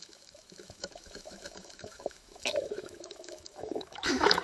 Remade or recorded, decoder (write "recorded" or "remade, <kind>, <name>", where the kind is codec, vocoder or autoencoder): remade, autoencoder, DAC-VAE